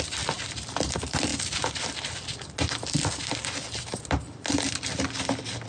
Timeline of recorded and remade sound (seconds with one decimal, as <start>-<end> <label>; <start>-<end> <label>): 0.0-5.7 recorded